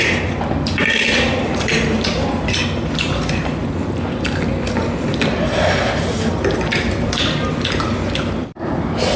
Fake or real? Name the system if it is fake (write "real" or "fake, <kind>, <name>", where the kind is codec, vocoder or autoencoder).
fake, vocoder, BigVGAN v2